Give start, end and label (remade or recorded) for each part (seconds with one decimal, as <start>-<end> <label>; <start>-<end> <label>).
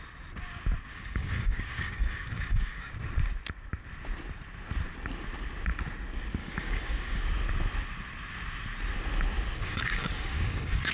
0.0-0.9 recorded; 0.9-2.9 remade; 2.9-6.4 recorded; 6.4-7.2 remade; 7.2-9.6 recorded; 9.6-10.9 remade